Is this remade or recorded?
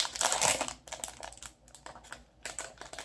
recorded